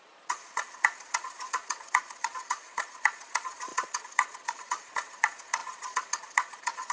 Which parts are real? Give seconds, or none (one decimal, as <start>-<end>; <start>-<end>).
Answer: none